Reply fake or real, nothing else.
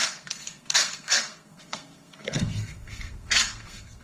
fake